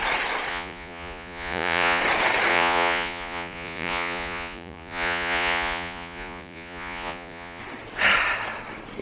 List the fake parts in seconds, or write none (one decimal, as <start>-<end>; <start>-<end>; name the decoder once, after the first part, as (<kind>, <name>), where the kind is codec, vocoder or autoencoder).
0.5-2.0 (vocoder, Vocos); 2.5-7.6